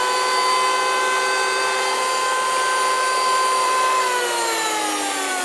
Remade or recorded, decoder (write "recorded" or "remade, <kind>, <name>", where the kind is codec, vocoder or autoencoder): remade, vocoder, BigVGAN v2